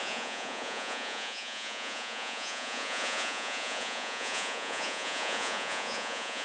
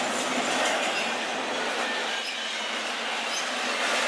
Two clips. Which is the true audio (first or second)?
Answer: second